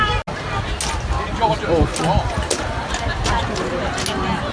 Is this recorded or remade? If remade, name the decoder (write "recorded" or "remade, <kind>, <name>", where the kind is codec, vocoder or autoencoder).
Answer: recorded